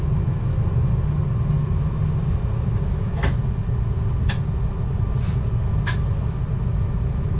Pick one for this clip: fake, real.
real